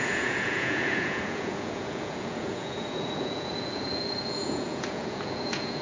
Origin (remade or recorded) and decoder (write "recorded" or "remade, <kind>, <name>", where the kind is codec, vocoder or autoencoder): remade, vocoder, Vocos